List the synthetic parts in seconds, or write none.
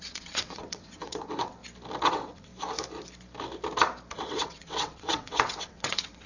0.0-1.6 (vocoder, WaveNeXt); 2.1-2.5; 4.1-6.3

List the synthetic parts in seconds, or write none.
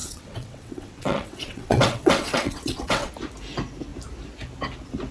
0.0-3.1 (vocoder, WaveNeXt)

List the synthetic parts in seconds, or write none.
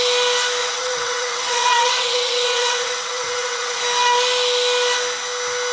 0.6-3.8 (vocoder, WaveNeXt)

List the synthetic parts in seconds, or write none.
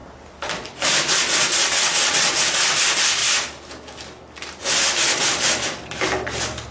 1.6-2.4 (vocoder, WaveNeXt)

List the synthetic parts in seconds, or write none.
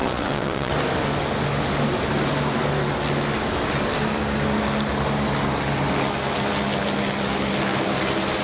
0.0-0.7 (vocoder, WaveNeXt)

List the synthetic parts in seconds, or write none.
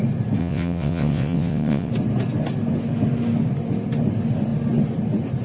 0.4-1.9 (vocoder, WaveNeXt)